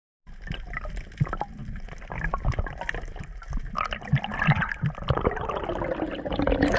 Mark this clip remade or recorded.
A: recorded